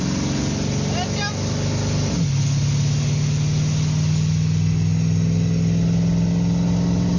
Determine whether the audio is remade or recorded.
recorded